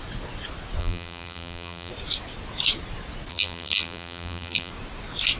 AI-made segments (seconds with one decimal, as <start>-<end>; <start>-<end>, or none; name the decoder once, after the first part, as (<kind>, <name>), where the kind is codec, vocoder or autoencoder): 0.8-1.9 (vocoder, BigVGAN v2); 3.3-4.7